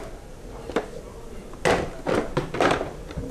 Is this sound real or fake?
real